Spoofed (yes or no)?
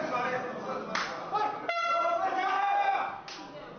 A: no